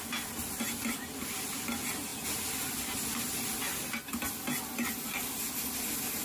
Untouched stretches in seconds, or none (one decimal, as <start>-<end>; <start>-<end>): 0.0-6.2